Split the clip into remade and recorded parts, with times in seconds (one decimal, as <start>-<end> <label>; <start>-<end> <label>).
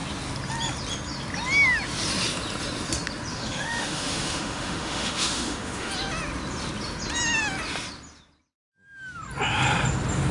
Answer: 0.0-3.3 recorded; 3.3-5.9 remade; 5.9-10.3 recorded